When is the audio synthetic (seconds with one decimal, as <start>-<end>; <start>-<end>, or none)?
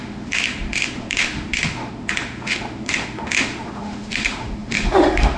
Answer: 0.0-5.4